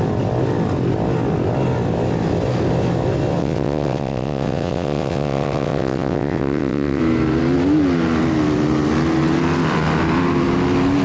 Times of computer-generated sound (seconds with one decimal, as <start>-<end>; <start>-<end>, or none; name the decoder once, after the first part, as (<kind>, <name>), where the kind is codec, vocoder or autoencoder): 3.4-7.0 (vocoder, WaveNeXt)